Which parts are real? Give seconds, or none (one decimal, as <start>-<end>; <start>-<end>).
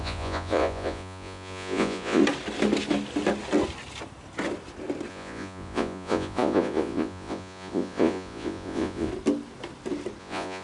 2.2-5.1; 9.1-10.2